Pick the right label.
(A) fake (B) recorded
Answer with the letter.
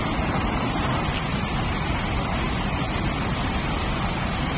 B